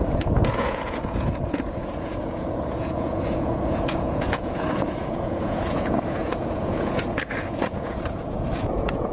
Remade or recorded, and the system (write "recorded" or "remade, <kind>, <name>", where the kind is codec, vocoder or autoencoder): remade, vocoder, Vocos